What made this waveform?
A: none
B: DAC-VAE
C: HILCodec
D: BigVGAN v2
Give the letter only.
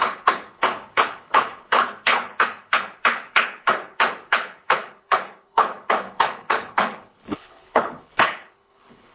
C